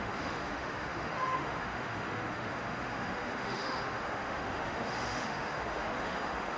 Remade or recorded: remade